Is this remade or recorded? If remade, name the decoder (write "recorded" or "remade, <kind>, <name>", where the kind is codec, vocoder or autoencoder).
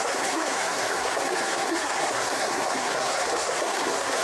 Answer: remade, codec, SNAC